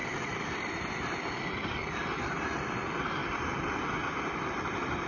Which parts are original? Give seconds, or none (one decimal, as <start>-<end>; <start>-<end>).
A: 1.3-3.2; 3.8-5.1

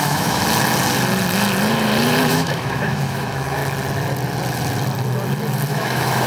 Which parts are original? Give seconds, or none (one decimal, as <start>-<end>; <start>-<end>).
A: 0.4-2.3; 3.6-5.7

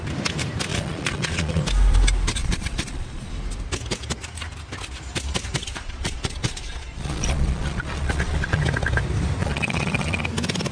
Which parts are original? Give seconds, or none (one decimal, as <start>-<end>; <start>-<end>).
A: 0.0-0.7; 1.6-2.4; 3.3-5.6; 8.6-9.4; 10.2-10.7